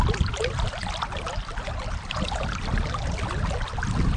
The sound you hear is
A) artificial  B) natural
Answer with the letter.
B